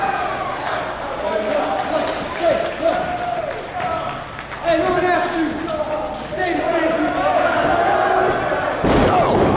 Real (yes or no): yes